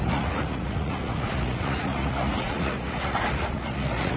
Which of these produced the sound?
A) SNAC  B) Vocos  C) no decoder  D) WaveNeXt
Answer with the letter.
B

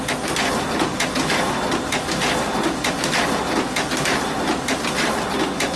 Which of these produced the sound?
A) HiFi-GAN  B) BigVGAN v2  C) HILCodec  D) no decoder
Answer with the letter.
D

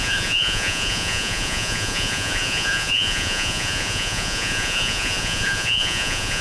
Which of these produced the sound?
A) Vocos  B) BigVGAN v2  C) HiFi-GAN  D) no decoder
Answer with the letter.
A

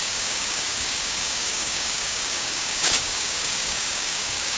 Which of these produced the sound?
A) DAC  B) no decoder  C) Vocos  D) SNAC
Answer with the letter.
A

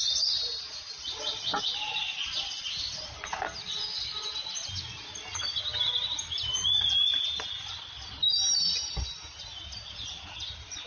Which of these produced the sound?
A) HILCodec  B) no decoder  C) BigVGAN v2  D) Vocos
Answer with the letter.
B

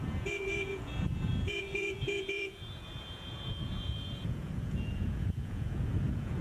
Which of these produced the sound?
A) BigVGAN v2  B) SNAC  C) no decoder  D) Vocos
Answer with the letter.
D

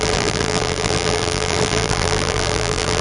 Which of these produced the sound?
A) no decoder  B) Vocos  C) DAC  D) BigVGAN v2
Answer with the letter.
D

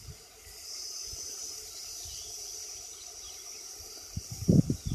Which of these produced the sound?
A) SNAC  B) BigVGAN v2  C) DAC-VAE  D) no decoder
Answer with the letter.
B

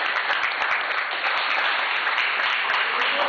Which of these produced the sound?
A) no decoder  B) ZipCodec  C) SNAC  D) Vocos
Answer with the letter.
A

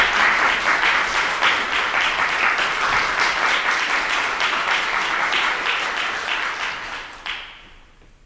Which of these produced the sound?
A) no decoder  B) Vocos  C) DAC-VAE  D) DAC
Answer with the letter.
A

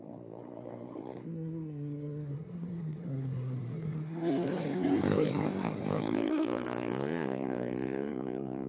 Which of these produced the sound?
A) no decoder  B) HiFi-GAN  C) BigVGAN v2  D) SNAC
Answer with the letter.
D